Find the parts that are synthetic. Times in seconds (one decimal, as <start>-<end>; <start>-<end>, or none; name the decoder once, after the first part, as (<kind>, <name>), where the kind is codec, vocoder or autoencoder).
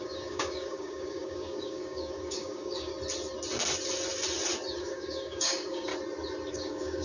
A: 0.0-2.9 (codec, DAC); 4.8-5.9; 6.5-7.0